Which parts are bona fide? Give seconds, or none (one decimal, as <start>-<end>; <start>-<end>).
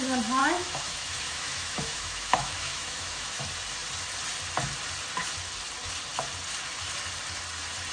0.0-0.4; 3.4-7.9